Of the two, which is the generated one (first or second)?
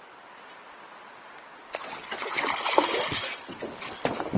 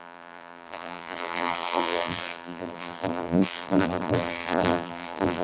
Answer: second